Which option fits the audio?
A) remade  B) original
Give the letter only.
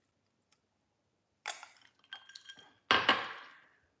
B